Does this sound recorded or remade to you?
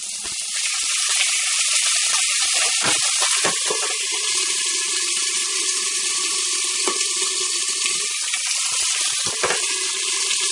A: recorded